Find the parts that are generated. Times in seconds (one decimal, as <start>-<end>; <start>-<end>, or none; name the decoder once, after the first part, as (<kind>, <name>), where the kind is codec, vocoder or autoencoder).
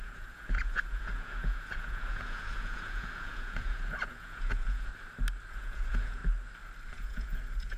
0.0-4.9 (vocoder, Vocos); 5.5-6.2; 6.9-7.8